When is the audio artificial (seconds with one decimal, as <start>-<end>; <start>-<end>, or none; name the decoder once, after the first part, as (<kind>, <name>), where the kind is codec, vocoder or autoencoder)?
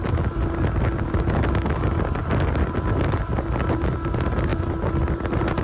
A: 4.5-5.6 (vocoder, BigVGAN v2)